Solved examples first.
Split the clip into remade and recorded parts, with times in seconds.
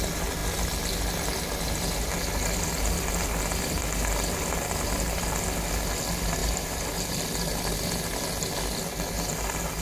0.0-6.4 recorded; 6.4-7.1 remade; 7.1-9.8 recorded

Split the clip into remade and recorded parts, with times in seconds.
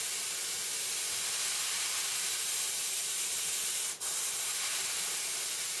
0.0-5.8 recorded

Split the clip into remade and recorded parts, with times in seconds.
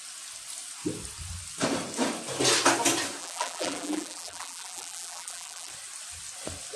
0.0-3.2 recorded; 3.2-5.7 remade; 5.7-6.8 recorded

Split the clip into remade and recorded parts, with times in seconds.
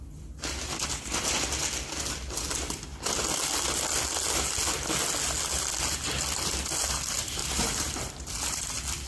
0.0-7.4 recorded; 7.4-8.3 remade; 8.3-9.1 recorded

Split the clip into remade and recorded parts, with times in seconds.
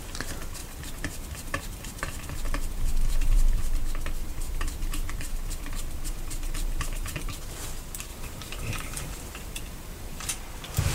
0.0-0.6 recorded; 0.6-3.8 remade; 3.8-4.2 recorded; 4.2-7.3 remade; 7.3-8.1 recorded; 8.1-10.3 remade; 10.3-10.9 recorded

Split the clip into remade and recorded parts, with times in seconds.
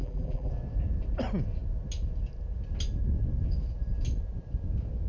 0.0-0.5 remade; 0.5-5.1 recorded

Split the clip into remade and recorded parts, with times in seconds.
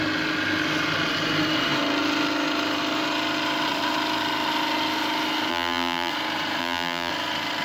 0.0-5.5 recorded; 5.5-6.1 remade; 6.1-6.6 recorded; 6.6-7.1 remade; 7.1-7.6 recorded